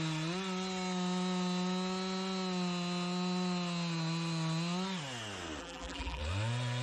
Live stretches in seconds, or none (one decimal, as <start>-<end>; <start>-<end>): 0.0-5.6; 6.2-6.8